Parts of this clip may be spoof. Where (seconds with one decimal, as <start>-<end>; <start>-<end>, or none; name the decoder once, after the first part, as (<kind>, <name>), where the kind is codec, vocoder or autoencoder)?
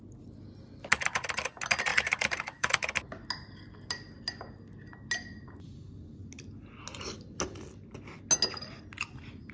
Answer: 1.9-2.7 (vocoder, BigVGAN v2)